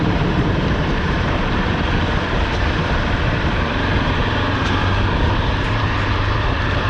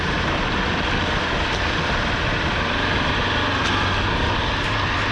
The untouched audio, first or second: second